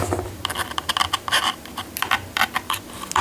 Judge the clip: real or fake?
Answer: fake